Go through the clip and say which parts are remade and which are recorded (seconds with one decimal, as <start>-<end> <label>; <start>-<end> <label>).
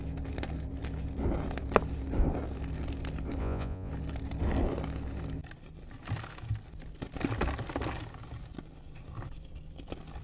0.0-3.4 recorded; 3.4-3.9 remade; 3.9-10.2 recorded